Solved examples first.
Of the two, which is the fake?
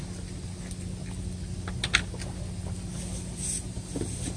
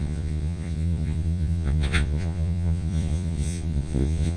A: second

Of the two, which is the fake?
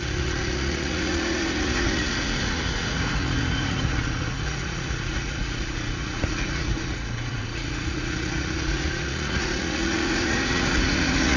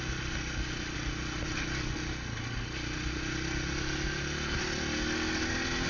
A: first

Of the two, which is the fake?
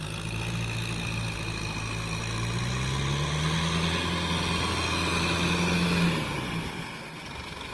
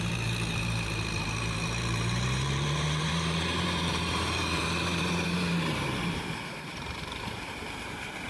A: second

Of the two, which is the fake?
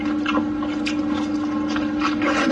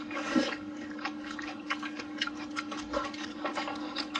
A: second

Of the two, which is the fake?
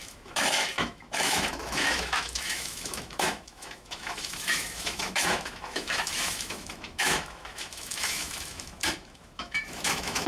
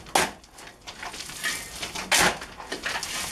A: first